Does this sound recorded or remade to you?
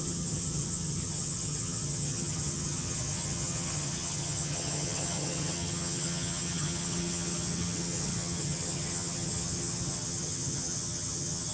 remade